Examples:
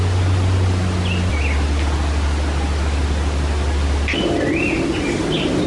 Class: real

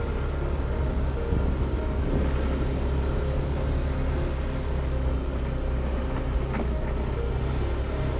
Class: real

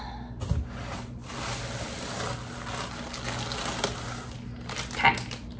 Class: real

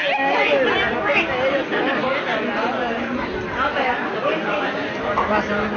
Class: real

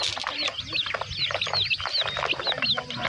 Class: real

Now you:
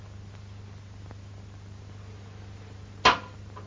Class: real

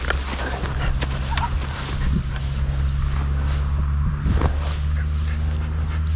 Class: real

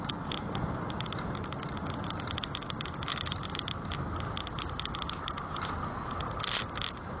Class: real